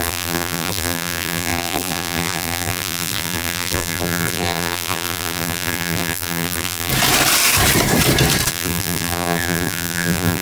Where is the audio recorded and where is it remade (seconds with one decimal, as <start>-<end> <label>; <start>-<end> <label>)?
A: 0.0-6.9 remade; 6.9-8.5 recorded; 8.5-10.4 remade